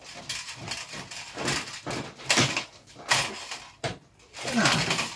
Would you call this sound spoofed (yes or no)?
no